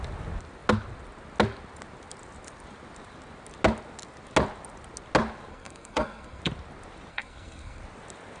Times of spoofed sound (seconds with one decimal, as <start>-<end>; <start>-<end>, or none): 5.5-6.4; 7.1-7.8